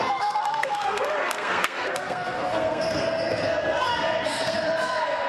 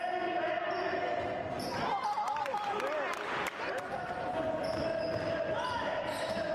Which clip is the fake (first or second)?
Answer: first